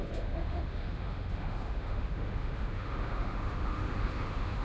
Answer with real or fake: fake